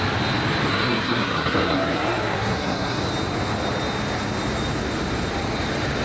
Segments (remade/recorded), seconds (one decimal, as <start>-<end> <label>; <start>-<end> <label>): 0.0-0.7 recorded; 0.7-3.0 remade; 3.0-6.0 recorded